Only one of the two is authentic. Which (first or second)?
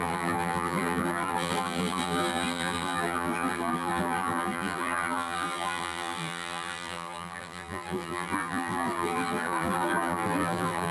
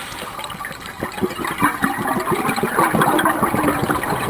second